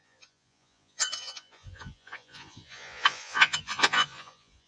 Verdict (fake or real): fake